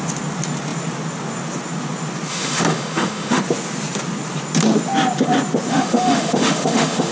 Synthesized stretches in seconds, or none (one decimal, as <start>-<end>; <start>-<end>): 2.3-3.4; 5.7-7.1

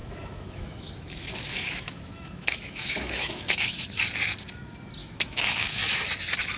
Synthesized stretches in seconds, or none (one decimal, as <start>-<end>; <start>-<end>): 0.0-4.0; 5.0-6.0

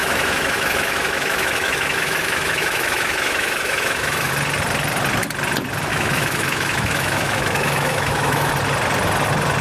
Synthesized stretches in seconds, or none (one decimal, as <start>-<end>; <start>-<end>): 0.0-4.3; 5.9-8.5

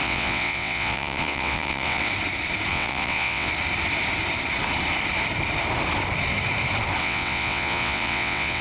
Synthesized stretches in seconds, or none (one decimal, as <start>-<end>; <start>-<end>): 0.0-2.1; 2.7-3.5; 7.0-8.6

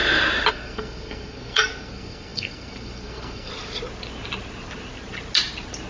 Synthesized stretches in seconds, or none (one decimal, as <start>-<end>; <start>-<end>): 0.5-3.5